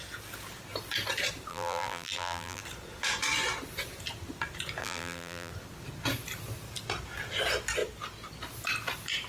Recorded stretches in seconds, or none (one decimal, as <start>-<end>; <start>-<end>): 0.0-1.5; 2.6-4.8; 5.5-9.3